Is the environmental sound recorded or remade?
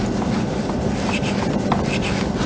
recorded